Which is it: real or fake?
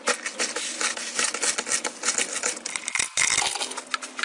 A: real